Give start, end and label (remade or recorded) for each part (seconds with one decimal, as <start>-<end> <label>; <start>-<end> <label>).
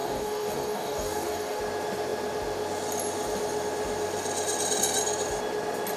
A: 0.0-1.6 remade; 1.6-6.0 recorded